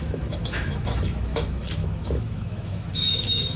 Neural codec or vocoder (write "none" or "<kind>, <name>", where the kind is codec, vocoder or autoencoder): autoencoder, DAC-VAE